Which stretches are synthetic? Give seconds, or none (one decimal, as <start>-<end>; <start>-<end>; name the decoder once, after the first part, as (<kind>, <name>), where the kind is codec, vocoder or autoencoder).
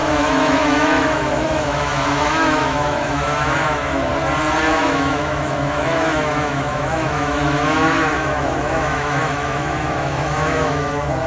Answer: 0.0-4.1 (autoencoder, DAC-VAE); 4.7-11.3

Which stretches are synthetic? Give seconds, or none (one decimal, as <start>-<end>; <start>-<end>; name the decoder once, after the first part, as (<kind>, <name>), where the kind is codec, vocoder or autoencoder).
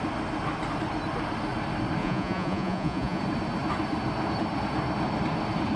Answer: 2.0-3.2 (vocoder, Vocos)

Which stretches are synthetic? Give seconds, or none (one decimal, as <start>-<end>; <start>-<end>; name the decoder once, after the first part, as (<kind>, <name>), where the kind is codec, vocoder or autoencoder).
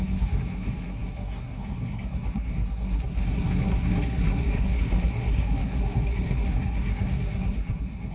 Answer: 0.0-8.1 (codec, SNAC)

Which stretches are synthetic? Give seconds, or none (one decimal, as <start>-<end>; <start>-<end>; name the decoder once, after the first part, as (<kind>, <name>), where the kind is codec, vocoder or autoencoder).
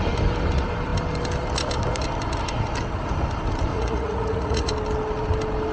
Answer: 3.7-4.7 (vocoder, Vocos)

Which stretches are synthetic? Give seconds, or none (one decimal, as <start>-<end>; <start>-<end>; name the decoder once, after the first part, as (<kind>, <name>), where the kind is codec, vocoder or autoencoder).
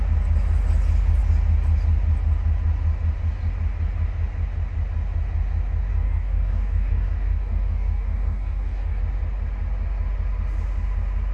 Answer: 5.9-9.0 (codec, DAC)